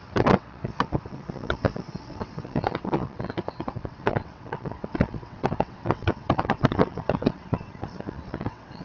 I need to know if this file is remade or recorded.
remade